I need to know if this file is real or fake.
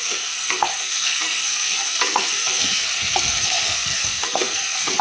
fake